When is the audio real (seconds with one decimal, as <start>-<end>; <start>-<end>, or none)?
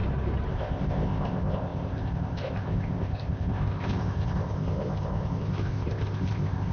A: 0.0-0.5